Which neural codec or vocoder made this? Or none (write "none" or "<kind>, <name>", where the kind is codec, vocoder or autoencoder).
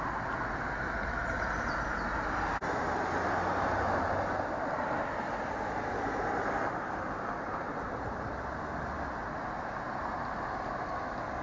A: none